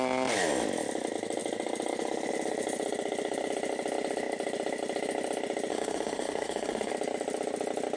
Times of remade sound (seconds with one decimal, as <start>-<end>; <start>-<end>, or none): 5.7-6.9